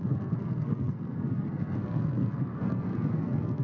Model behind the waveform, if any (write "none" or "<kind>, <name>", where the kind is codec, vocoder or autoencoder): codec, SNAC